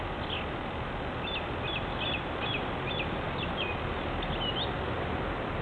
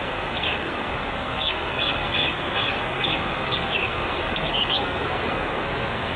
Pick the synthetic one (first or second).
second